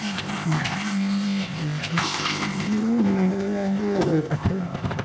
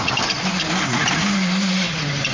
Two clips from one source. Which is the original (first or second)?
second